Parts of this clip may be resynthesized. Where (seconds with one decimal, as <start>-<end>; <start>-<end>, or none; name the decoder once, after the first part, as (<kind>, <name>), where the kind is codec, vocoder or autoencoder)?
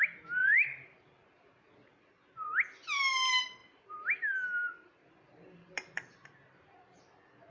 0.4-2.1 (vocoder, BigVGAN v2); 3.6-7.0